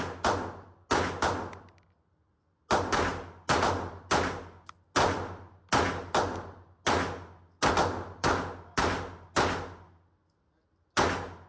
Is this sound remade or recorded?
recorded